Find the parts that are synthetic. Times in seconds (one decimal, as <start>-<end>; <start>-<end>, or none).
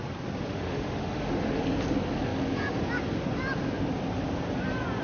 0.5-1.6